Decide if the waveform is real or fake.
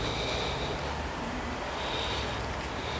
real